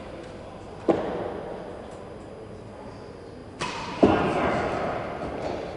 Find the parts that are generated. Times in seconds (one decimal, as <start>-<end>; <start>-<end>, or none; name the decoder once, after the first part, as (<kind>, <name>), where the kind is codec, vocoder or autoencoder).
3.4-4.5 (vocoder, BigVGAN v2)